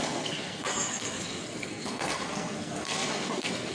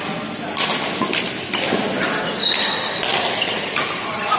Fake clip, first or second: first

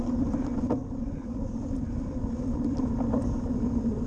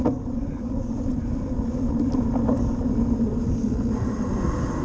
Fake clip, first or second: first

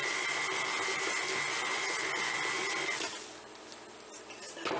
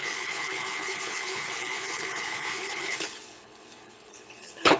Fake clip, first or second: second